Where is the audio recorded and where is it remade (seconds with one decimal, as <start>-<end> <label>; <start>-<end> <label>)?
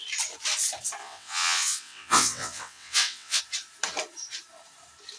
0.0-1.0 recorded; 1.0-3.4 remade; 3.4-5.2 recorded